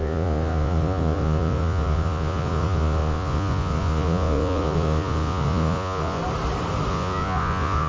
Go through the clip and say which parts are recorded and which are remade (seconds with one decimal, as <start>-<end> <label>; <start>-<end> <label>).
0.0-6.2 remade; 6.2-6.9 recorded; 6.9-7.9 remade